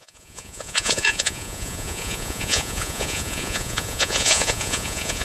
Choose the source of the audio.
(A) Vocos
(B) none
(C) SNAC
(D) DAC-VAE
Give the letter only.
A